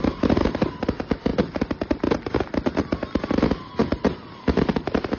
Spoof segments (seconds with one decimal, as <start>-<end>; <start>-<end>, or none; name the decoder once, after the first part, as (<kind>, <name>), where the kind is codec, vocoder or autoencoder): none